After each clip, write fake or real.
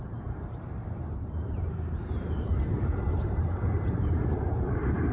fake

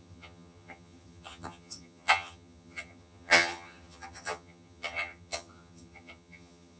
fake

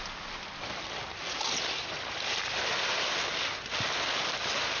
real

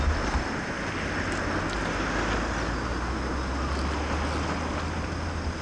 real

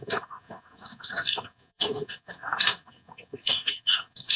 fake